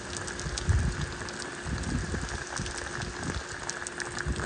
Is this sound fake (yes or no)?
no